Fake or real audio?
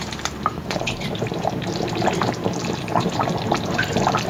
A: fake